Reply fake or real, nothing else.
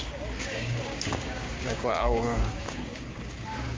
fake